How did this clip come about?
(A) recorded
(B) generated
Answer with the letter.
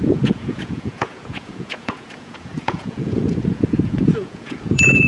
B